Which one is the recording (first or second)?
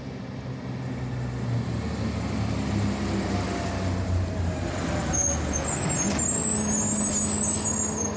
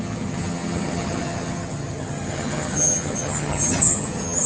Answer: first